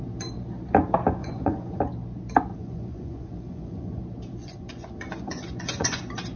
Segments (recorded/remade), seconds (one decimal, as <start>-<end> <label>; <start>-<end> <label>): 0.0-1.2 recorded; 1.2-1.8 remade; 1.8-2.5 recorded; 2.5-4.0 remade; 4.0-4.4 recorded; 4.4-6.0 remade; 6.0-6.4 recorded